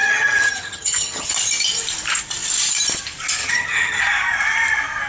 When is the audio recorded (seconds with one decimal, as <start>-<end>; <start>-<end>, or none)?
1.3-3.4; 4.0-5.1